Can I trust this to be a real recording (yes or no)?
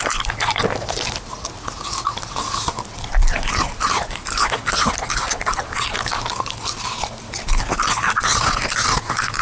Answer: yes